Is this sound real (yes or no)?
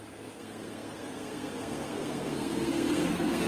no